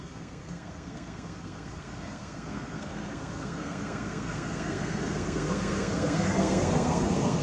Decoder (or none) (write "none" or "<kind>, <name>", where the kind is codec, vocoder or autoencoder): codec, SNAC